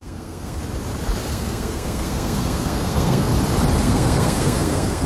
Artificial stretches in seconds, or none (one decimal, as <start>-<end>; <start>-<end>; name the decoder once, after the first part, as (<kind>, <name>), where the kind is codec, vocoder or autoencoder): 0.0-0.6 (codec, SNAC); 1.3-3.3; 3.8-5.1